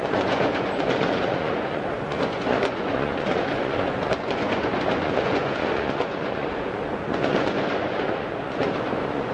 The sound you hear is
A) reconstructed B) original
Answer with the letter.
A